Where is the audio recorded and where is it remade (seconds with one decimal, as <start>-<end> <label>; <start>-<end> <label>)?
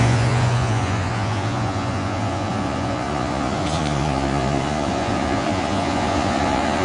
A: 0.0-6.8 remade